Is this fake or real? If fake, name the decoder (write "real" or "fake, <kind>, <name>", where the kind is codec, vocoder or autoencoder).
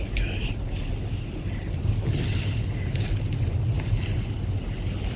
real